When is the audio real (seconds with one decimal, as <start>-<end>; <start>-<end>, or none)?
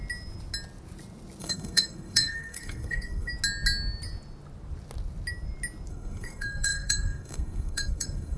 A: 0.0-1.4; 3.3-5.9